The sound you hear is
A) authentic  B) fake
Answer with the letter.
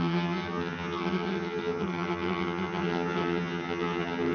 B